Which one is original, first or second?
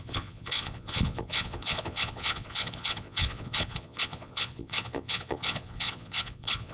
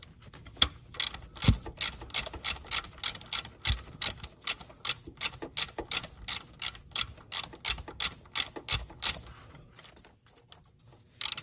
second